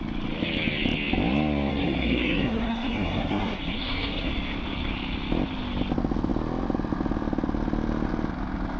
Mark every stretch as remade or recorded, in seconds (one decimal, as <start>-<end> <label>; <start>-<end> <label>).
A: 0.0-1.7 recorded; 1.7-4.3 remade; 4.3-8.8 recorded